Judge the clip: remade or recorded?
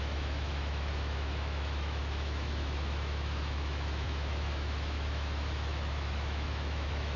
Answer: remade